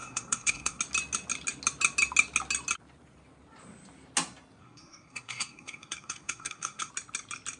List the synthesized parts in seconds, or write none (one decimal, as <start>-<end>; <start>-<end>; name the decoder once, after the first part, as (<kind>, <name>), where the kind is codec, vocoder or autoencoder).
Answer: 0.0-0.8 (codec, SNAC); 4.6-6.9